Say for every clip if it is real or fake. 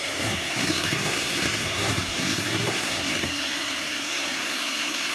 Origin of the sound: fake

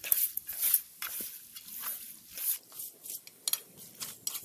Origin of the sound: real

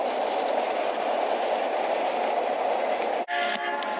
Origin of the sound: real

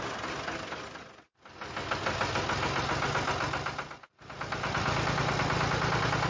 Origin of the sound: real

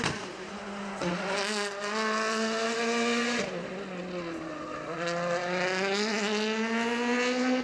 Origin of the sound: real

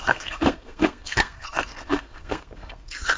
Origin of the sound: fake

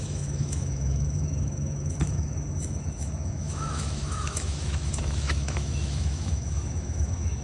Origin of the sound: fake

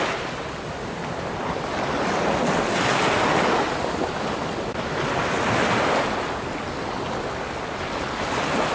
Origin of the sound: real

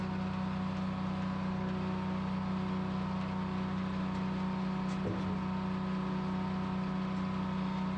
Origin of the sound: real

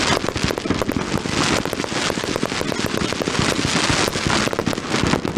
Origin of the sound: real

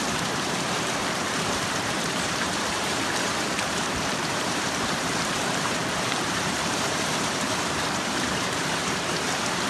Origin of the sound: fake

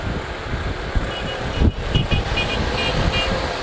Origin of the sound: real